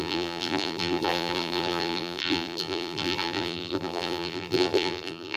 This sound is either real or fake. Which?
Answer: fake